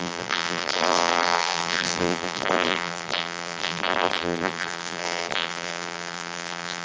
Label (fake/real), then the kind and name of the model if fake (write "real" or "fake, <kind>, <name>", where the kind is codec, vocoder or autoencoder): fake, vocoder, BigVGAN v2